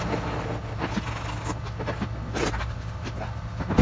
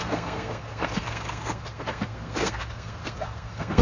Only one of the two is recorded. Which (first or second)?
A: first